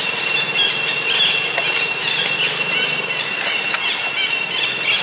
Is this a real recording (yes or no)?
yes